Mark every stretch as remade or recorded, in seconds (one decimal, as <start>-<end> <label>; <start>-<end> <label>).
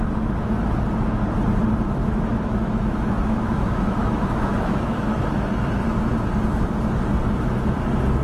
0.0-2.0 recorded; 2.0-5.3 remade; 5.3-8.2 recorded